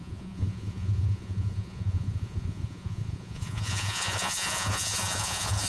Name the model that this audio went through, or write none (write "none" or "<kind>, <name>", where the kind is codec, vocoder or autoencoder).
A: vocoder, Vocos